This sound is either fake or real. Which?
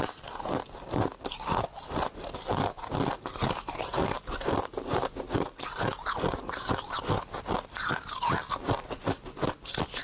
real